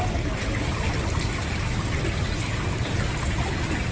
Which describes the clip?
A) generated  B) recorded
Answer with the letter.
B